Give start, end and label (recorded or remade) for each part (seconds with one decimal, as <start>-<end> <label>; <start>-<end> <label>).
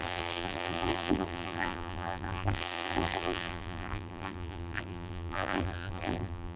0.0-6.6 remade